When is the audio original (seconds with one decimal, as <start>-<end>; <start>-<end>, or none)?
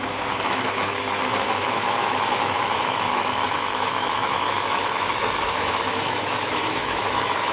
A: none